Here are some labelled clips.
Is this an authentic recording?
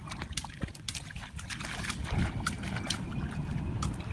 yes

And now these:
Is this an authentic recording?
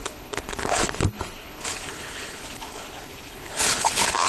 no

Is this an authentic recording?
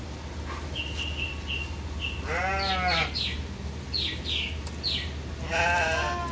yes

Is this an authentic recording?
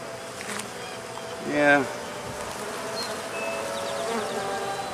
yes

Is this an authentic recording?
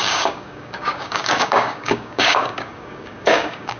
no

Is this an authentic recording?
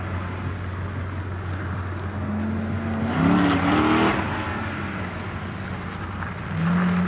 yes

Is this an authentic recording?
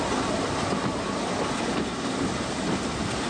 yes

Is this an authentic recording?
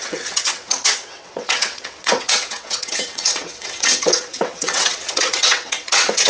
no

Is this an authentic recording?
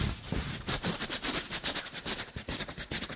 yes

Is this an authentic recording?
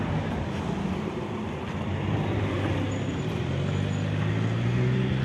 yes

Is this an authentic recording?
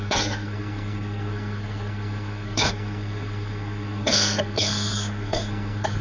no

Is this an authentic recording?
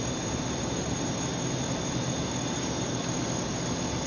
yes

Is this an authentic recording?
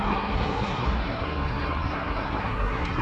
no